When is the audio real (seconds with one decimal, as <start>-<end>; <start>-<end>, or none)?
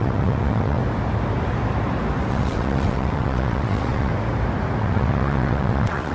0.8-2.3; 4.1-4.8